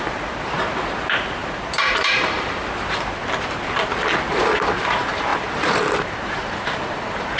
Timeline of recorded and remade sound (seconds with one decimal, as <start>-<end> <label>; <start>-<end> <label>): 0.0-2.6 remade; 2.6-4.3 recorded; 4.3-7.4 remade